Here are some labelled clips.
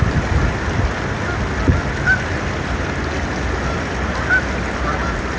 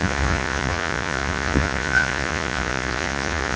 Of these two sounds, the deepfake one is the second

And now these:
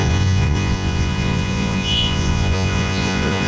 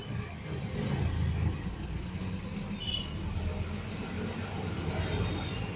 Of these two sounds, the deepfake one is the first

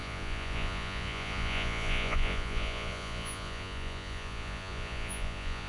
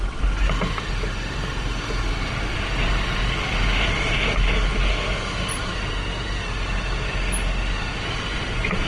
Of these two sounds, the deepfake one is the first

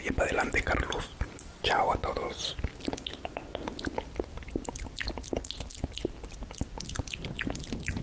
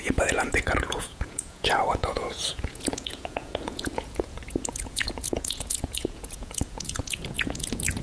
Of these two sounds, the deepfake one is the second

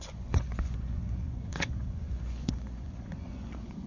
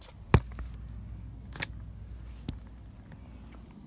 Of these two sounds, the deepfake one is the first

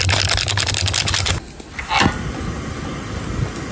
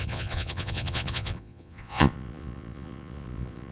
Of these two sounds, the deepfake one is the second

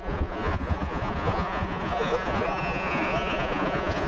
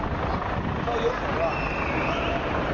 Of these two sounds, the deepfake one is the first